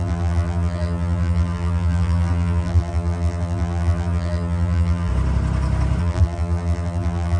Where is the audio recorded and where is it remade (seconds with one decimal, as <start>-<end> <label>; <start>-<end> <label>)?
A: 0.0-5.1 remade; 5.1-6.0 recorded; 6.0-7.4 remade